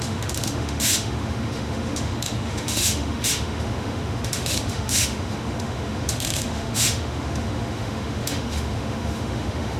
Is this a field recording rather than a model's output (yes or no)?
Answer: no